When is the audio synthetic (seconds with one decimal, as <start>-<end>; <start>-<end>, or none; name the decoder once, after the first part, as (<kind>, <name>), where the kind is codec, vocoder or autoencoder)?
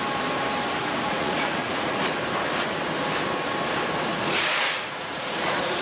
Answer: 0.8-2.0 (vocoder, Vocos); 4.1-5.8